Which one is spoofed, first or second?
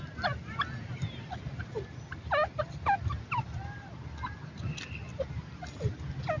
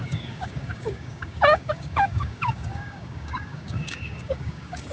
second